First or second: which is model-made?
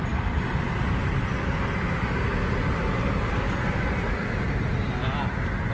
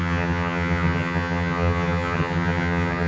second